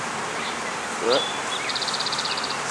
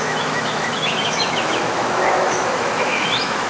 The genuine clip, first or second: first